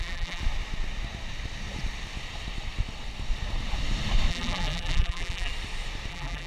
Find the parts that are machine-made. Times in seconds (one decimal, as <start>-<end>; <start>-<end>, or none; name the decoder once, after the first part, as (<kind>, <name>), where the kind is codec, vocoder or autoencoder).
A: 0.0-0.4 (vocoder, BigVGAN v2); 4.3-5.5; 6.1-6.5

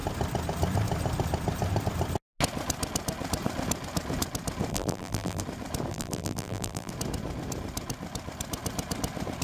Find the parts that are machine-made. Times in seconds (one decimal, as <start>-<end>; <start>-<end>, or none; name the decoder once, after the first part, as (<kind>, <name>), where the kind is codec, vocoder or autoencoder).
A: 4.7-5.4 (vocoder, BigVGAN v2); 5.9-6.9

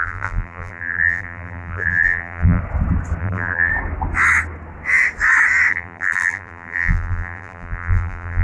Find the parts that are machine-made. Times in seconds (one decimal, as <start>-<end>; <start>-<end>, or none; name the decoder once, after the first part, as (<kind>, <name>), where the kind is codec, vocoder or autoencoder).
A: 0.0-2.6 (vocoder, BigVGAN v2); 3.2-3.7; 5.7-8.4